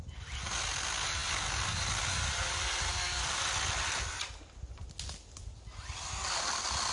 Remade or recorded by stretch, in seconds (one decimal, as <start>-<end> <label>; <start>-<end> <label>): 0.0-6.9 recorded